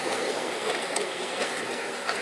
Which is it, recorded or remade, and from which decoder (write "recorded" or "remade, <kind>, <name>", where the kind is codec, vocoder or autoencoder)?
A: remade, codec, SNAC